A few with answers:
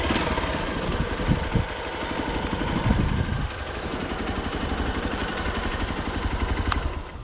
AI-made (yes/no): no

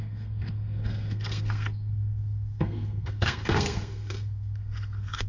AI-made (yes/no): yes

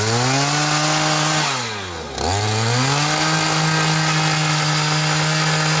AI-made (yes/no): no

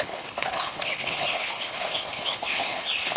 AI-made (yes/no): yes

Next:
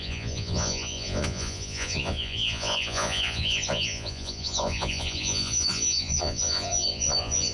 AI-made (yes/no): yes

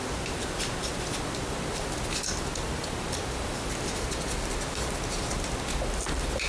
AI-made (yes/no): no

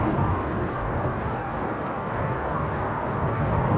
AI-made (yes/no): yes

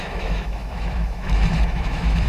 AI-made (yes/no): yes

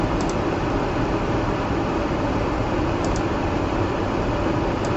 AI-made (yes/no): no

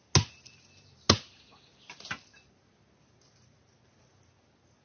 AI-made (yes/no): no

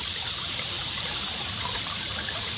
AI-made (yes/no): yes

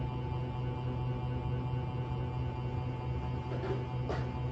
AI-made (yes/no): no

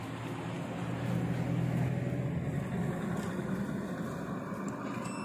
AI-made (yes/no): no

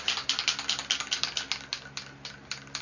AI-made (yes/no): no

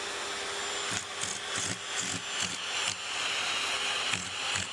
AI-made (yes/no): no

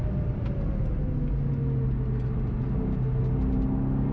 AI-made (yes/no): no